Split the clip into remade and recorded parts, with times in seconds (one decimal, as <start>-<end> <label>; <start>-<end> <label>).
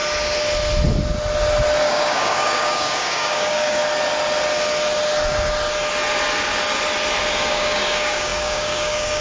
0.0-1.8 recorded; 1.8-3.8 remade; 3.8-7.3 recorded; 7.3-9.2 remade